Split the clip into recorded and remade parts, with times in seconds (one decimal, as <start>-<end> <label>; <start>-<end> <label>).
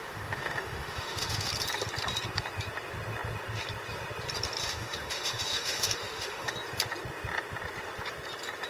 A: 0.0-1.5 remade; 1.5-4.6 recorded; 4.6-6.5 remade; 6.5-8.7 recorded